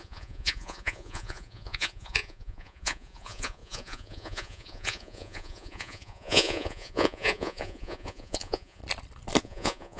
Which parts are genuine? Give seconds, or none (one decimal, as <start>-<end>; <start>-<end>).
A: 8.8-9.4